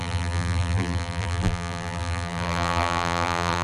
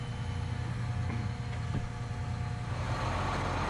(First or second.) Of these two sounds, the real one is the second